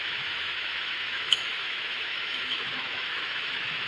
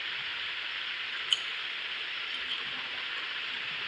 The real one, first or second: second